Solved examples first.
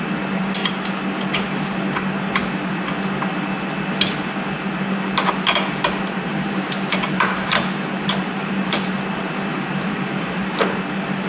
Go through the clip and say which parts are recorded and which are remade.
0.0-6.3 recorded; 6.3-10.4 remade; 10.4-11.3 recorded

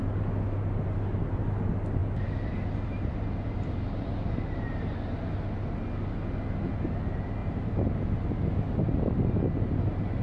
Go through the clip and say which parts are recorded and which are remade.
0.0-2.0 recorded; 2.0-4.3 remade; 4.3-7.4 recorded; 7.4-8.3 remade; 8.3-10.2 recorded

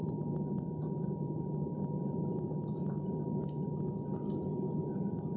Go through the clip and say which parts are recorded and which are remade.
0.0-3.2 remade; 3.2-4.5 recorded; 4.5-5.4 remade

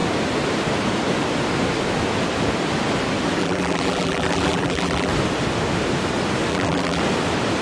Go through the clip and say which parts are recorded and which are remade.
0.0-3.4 recorded; 3.4-5.1 remade; 5.1-6.5 recorded; 6.5-7.0 remade; 7.0-7.6 recorded

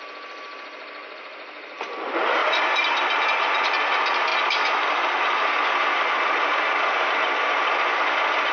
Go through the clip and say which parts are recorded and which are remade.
0.0-1.0 recorded; 1.0-1.9 remade; 1.9-2.4 recorded; 2.4-3.9 remade; 3.9-8.5 recorded